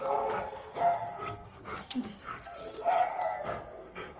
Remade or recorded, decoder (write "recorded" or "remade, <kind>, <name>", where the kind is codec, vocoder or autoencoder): remade, codec, SNAC